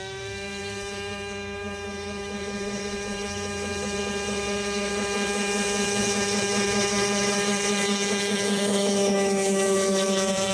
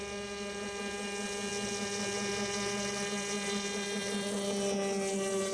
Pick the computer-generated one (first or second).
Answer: first